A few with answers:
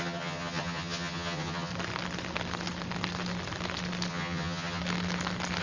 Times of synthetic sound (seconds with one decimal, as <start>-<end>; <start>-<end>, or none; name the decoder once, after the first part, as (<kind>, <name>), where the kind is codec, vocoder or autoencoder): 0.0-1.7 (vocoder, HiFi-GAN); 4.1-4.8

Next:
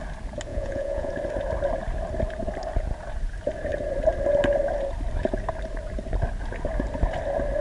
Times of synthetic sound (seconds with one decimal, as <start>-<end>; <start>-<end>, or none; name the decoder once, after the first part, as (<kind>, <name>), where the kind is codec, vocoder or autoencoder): 0.5-1.1 (vocoder, Vocos)

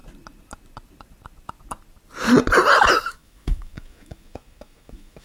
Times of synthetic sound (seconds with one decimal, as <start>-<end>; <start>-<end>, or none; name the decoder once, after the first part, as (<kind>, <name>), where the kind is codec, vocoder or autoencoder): 3.1-5.2 (autoencoder, DAC-VAE)